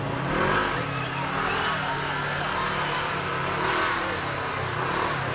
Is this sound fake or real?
real